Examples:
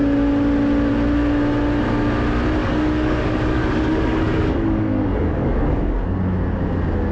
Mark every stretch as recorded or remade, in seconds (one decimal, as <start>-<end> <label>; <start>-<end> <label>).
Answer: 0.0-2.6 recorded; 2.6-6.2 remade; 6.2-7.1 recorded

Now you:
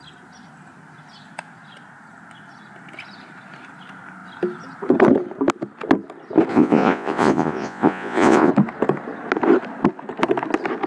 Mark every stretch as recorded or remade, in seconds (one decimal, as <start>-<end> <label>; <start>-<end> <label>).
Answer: 0.0-6.5 recorded; 6.5-8.5 remade; 8.5-10.9 recorded

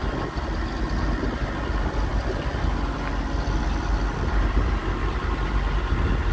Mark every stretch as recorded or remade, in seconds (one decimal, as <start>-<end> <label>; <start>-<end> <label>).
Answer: 0.0-6.3 recorded

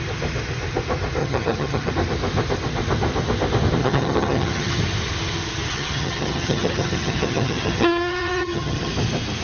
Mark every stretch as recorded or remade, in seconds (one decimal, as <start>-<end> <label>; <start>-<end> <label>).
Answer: 0.0-1.2 recorded; 1.2-1.9 remade; 1.9-3.8 recorded; 3.8-4.8 remade; 4.8-5.7 recorded; 5.7-8.9 remade; 8.9-9.4 recorded

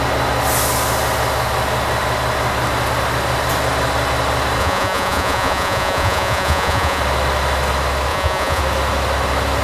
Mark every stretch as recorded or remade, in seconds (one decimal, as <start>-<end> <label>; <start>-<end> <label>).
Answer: 0.0-4.6 recorded; 4.6-7.0 remade; 7.0-8.1 recorded; 8.1-8.6 remade; 8.6-9.6 recorded

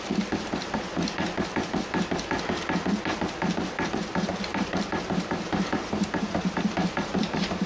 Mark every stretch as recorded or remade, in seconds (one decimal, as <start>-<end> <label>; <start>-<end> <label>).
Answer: 0.0-4.5 recorded; 4.5-6.0 remade; 6.0-6.9 recorded; 6.9-7.7 remade

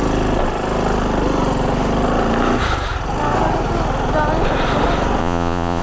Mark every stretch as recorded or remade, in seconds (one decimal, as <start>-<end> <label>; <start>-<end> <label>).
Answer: 0.0-5.2 recorded; 5.2-5.8 remade